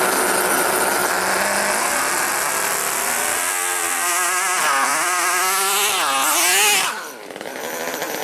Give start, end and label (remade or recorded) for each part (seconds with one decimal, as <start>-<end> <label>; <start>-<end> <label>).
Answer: 0.0-8.2 recorded